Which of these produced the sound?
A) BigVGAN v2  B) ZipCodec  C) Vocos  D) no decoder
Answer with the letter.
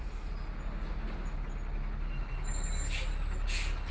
D